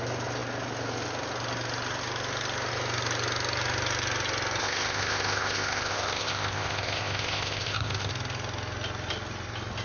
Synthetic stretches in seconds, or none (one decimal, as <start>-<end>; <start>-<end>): 4.6-8.1